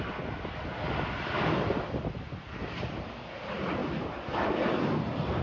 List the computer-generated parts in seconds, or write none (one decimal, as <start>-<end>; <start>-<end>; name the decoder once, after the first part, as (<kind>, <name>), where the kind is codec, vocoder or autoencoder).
none